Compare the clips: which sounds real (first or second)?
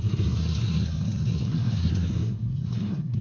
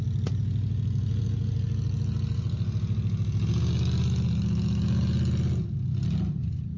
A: second